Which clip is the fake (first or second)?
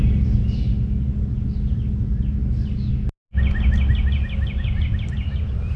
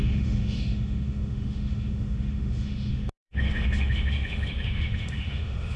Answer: second